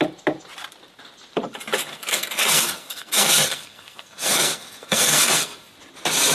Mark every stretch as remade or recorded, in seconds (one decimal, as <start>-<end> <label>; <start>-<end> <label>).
0.0-1.9 recorded; 1.9-5.7 remade; 5.7-6.3 recorded